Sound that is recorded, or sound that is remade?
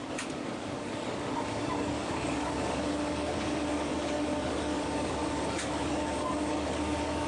remade